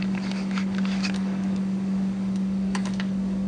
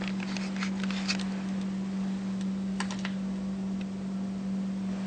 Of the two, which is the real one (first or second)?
second